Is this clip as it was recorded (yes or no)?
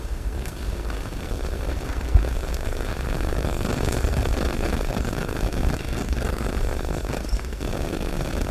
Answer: no